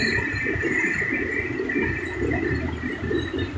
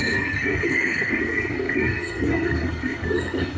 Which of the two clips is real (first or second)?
first